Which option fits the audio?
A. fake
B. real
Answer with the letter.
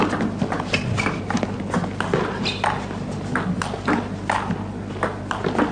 B